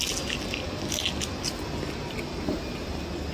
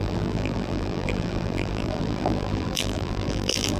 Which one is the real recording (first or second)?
first